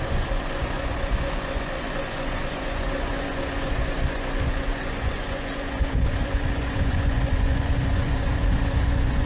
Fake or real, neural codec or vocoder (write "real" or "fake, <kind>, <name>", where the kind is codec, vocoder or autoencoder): fake, vocoder, Vocos